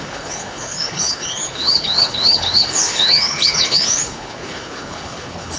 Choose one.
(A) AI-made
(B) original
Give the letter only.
A